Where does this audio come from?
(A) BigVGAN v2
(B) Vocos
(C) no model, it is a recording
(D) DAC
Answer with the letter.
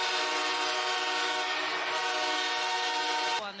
C